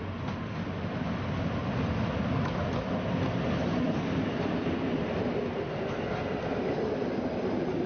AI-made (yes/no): no